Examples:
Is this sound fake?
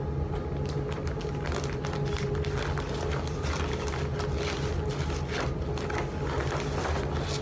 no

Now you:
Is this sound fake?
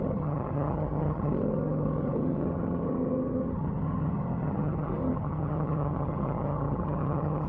yes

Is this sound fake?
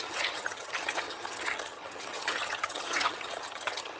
yes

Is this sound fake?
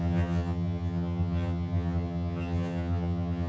yes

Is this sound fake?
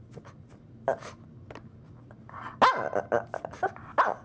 no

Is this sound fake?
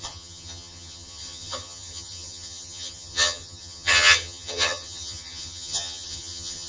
yes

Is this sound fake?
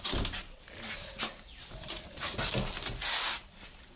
no